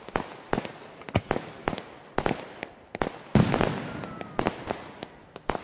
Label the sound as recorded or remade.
recorded